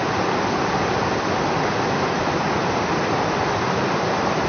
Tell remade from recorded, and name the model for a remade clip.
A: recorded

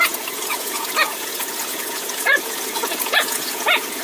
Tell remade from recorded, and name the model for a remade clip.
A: remade, vocoder, Vocos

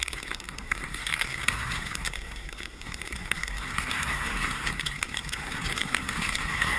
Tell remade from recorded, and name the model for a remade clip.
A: remade, codec, SNAC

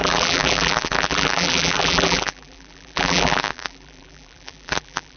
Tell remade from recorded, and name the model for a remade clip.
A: remade, vocoder, BigVGAN v2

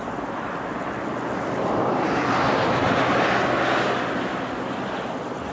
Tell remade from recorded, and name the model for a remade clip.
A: recorded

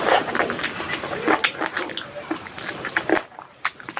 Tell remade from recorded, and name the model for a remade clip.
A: recorded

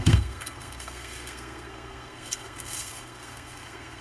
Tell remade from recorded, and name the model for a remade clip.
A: remade, codec, SNAC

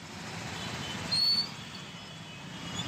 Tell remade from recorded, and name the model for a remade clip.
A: recorded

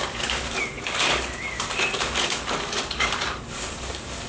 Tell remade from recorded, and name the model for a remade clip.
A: remade, codec, DAC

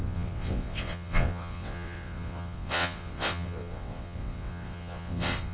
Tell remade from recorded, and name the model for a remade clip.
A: remade, vocoder, WaveNeXt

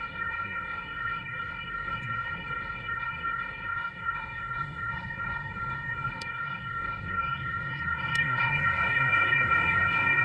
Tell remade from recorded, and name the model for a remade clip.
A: remade, codec, SNAC